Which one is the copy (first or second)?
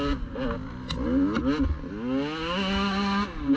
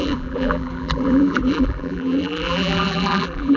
second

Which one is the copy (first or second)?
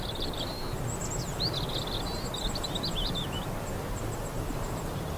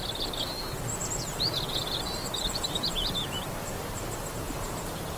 second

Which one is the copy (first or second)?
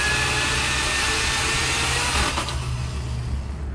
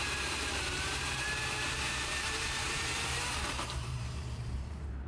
second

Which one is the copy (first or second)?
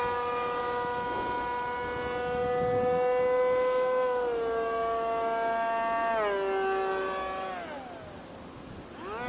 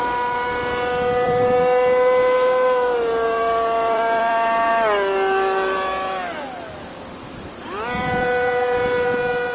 second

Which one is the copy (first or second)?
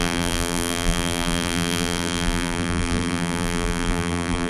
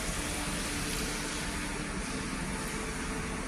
first